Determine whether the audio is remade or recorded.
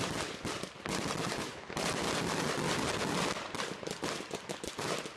recorded